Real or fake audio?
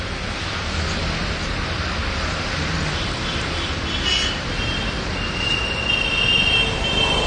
real